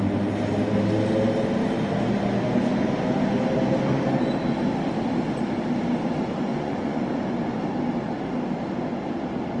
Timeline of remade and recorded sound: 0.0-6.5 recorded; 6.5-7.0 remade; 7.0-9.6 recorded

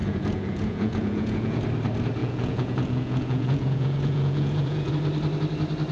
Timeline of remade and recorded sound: 0.0-1.6 remade; 1.6-2.2 recorded; 2.2-4.9 remade; 4.9-5.9 recorded

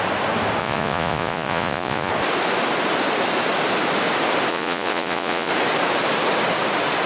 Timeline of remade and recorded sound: 0.0-0.6 recorded; 0.6-2.1 remade; 2.1-4.5 recorded; 4.5-5.5 remade; 5.5-7.1 recorded

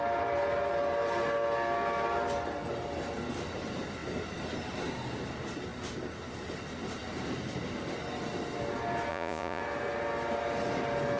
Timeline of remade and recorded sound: 0.0-9.1 recorded; 9.1-9.6 remade; 9.6-11.2 recorded

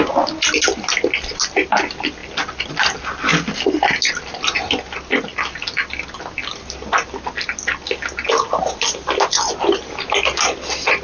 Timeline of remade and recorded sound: 0.0-11.0 recorded